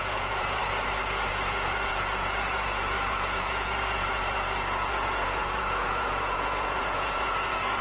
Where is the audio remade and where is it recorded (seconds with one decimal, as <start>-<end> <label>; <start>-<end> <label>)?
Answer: 0.0-0.6 remade; 0.6-1.3 recorded; 1.3-7.8 remade